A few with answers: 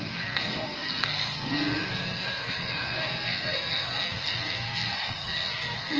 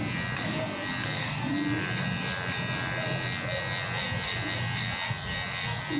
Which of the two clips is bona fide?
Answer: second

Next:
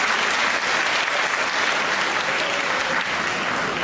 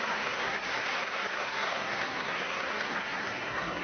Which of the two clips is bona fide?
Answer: first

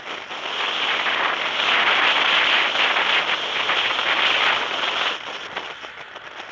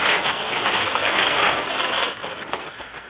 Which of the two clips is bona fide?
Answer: first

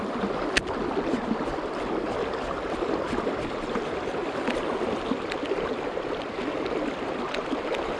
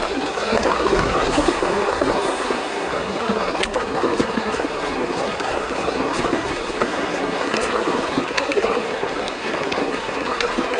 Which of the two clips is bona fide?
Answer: first